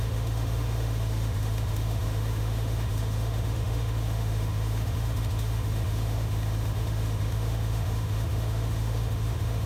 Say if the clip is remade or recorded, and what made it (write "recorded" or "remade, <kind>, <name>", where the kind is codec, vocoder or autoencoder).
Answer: remade, autoencoder, DAC-VAE